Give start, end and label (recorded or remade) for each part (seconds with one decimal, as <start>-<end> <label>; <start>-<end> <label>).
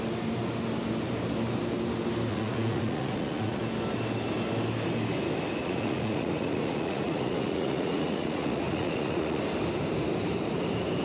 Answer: 0.0-2.3 recorded; 2.3-3.6 remade; 3.6-5.6 recorded; 5.6-9.4 remade; 9.4-11.0 recorded